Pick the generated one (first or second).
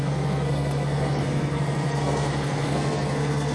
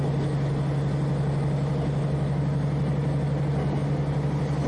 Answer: first